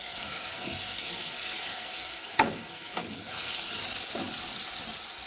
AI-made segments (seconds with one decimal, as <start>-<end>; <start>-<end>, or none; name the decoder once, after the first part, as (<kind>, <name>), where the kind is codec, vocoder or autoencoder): 0.0-3.8 (codec, SNAC)

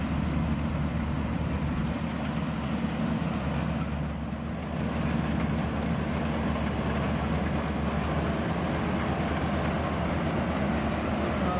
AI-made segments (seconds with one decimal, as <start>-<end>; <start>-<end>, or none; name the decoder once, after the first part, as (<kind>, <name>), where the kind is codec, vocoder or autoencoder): none

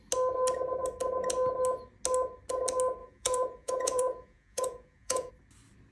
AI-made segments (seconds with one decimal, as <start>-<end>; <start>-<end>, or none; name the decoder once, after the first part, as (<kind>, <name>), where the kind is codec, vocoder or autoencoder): 3.0-5.3 (vocoder, Vocos)

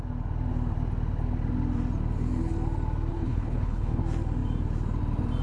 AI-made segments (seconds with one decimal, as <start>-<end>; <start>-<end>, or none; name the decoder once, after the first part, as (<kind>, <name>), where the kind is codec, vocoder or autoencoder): 3.1-4.0 (codec, HILCodec)

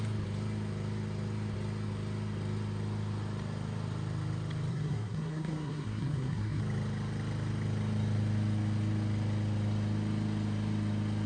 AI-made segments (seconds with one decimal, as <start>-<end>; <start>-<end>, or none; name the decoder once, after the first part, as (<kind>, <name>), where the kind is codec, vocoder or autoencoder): 4.7-6.6 (codec, SNAC)

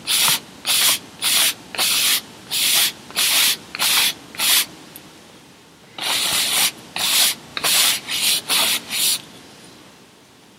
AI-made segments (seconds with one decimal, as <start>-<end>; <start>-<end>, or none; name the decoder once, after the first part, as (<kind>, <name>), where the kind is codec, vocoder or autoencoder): 2.1-3.9 (vocoder, BigVGAN v2); 7.5-8.2